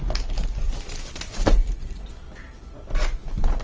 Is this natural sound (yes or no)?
yes